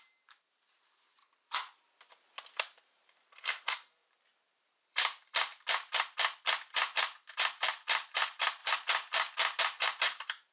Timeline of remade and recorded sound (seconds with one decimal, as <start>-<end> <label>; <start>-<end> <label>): 0.0-1.2 remade; 1.2-2.6 recorded; 2.6-5.5 remade; 5.5-7.3 recorded; 7.3-8.6 remade; 8.6-9.6 recorded; 9.6-10.5 remade